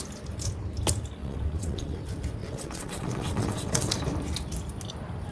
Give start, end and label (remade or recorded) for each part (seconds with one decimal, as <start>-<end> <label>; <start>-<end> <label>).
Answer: 0.0-1.2 recorded; 1.2-2.0 remade; 2.0-2.4 recorded; 2.4-3.9 remade; 3.9-5.3 recorded

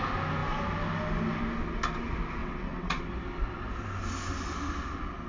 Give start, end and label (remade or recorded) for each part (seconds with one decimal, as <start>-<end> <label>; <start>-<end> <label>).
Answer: 0.0-2.4 recorded; 2.4-3.0 remade; 3.0-5.3 recorded

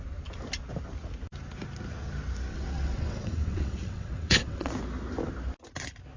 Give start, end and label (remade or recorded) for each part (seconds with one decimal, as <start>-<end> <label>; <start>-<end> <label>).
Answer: 0.0-2.5 recorded; 2.5-4.7 remade; 4.7-6.2 recorded

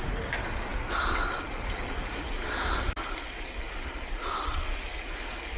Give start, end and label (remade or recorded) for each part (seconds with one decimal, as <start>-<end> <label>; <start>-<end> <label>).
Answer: 0.0-5.6 recorded

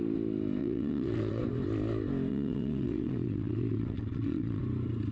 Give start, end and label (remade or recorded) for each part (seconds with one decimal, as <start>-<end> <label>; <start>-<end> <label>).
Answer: 0.0-0.6 recorded; 0.6-1.4 remade; 1.4-2.3 recorded; 2.3-4.6 remade; 4.6-5.1 recorded

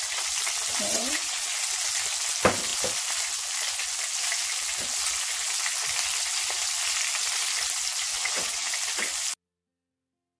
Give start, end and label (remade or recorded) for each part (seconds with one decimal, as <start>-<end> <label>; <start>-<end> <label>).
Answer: 0.0-0.9 recorded; 0.9-1.5 remade; 1.5-8.1 recorded; 8.1-8.7 remade; 8.7-10.4 recorded

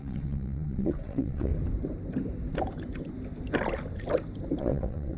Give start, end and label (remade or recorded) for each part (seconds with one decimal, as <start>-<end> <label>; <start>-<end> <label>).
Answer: 0.0-1.5 remade; 1.5-4.6 recorded; 4.6-5.2 remade

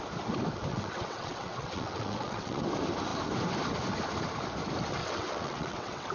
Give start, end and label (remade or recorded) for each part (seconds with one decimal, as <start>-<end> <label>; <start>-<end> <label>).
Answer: 0.0-0.7 recorded; 0.7-2.6 remade; 2.6-5.0 recorded; 5.0-6.1 remade